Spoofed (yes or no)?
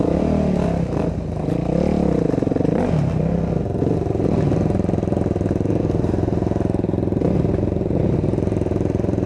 no